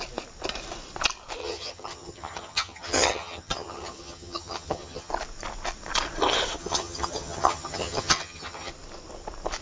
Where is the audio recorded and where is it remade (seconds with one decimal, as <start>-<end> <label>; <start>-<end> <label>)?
0.0-1.4 recorded; 1.4-5.1 remade; 5.1-6.6 recorded; 6.6-8.7 remade; 8.7-9.6 recorded